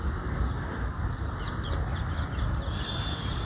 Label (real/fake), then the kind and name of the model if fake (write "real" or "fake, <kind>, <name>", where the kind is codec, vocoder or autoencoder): real